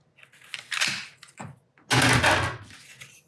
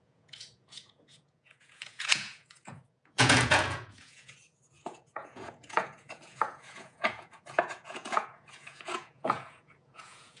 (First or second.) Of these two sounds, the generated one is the second